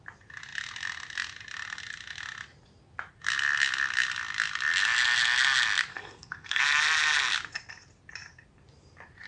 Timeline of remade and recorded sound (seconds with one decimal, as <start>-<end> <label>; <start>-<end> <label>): 0.0-5.9 recorded; 5.9-6.6 remade; 6.6-9.3 recorded